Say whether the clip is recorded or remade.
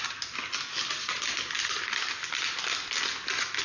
recorded